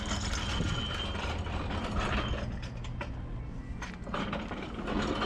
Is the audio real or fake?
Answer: real